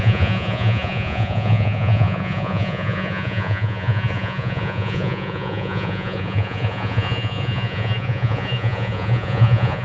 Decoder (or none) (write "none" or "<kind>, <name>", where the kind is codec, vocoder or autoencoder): vocoder, Vocos